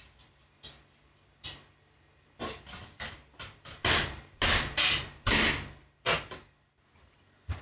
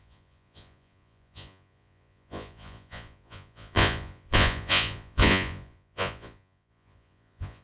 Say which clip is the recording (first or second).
first